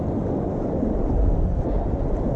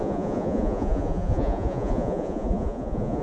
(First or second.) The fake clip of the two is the second